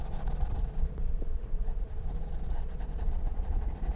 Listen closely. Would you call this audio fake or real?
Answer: fake